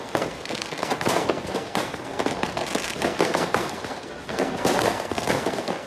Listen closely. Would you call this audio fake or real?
fake